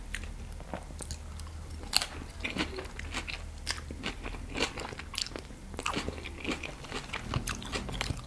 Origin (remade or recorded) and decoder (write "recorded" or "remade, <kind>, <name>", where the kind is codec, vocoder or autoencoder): recorded